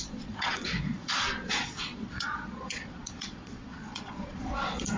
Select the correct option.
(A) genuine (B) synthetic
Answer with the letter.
B